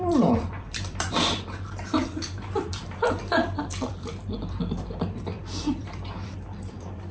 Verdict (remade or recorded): remade